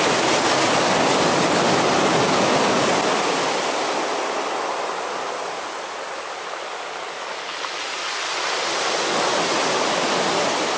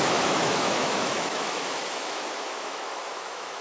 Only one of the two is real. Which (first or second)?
first